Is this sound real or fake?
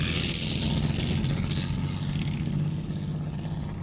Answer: real